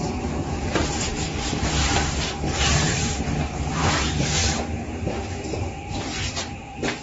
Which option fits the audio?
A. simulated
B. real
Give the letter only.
A